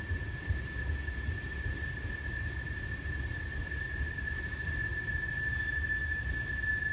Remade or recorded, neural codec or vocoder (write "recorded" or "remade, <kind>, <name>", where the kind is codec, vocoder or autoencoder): recorded